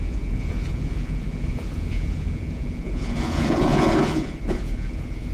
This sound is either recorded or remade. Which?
remade